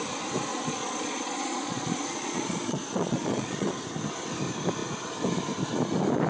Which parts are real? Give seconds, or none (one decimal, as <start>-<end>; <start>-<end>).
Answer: 0.0-0.5; 3.8-6.3